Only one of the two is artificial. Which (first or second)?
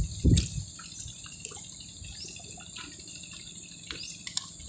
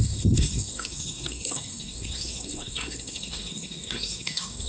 second